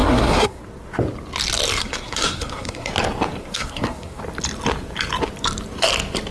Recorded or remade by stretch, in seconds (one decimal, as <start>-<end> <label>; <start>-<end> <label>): 0.0-0.6 remade; 0.6-1.8 recorded; 1.8-2.9 remade; 2.9-3.4 recorded; 3.4-4.2 remade; 4.2-6.3 recorded